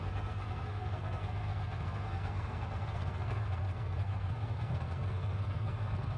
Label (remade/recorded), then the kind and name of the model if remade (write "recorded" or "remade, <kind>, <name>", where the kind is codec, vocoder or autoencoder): remade, codec, SNAC